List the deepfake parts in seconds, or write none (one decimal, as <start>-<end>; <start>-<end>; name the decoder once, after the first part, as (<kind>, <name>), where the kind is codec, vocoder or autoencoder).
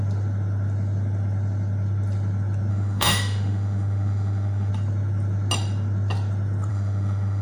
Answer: 2.7-4.7 (autoencoder, DAC-VAE); 6.7-7.4